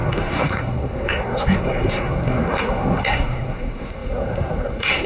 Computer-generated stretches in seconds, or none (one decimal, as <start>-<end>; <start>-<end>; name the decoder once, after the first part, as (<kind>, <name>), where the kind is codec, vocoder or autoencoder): 0.0-5.1 (codec, SNAC)